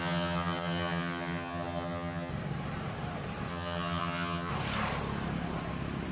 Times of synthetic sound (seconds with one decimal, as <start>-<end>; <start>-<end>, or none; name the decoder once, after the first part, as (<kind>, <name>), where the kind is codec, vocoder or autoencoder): 0.0-2.3 (vocoder, HiFi-GAN); 3.5-4.5